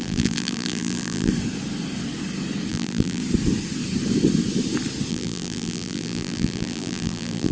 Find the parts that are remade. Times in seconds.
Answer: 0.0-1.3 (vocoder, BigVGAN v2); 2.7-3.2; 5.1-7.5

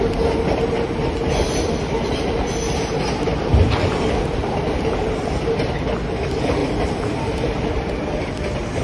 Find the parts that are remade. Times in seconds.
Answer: 3.5-5.6 (vocoder, BigVGAN v2); 6.6-8.3

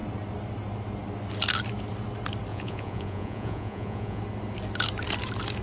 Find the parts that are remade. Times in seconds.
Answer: 2.5-4.2 (vocoder, Vocos)

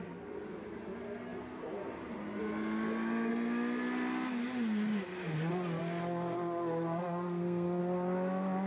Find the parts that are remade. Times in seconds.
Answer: 7.0-7.8 (codec, SNAC)